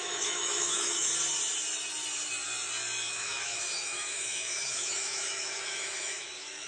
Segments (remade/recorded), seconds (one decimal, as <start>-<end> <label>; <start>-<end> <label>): 0.0-1.1 remade; 1.1-3.1 recorded; 3.1-6.7 remade